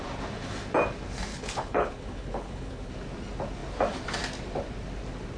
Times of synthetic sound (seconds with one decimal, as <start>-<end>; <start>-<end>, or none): 1.3-2.9